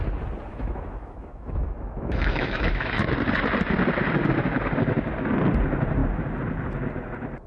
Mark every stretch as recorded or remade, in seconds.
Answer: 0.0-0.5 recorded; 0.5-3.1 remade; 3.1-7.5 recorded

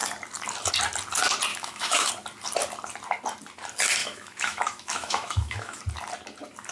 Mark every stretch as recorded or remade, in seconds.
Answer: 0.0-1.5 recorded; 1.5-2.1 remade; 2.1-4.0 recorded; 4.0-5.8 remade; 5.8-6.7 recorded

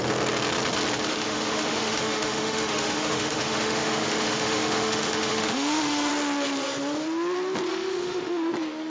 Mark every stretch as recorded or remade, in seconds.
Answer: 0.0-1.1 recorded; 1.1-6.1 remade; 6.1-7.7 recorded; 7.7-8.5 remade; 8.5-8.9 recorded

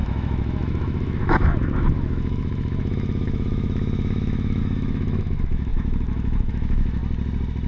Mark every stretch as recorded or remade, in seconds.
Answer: 0.0-7.0 remade; 7.0-7.7 recorded

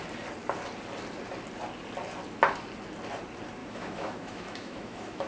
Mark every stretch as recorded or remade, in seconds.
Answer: 0.0-3.6 recorded; 3.6-5.3 remade